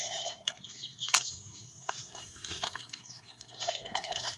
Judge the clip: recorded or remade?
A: remade